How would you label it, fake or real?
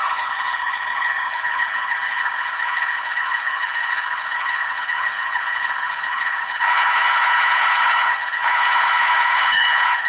fake